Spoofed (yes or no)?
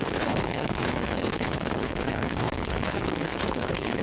yes